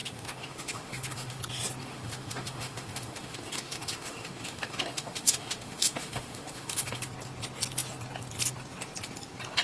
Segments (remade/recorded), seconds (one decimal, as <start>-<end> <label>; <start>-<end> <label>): 0.0-1.4 remade; 1.4-1.8 recorded; 1.8-7.0 remade; 7.0-9.6 recorded